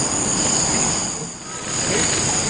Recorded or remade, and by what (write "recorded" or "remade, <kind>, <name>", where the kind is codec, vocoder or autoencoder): recorded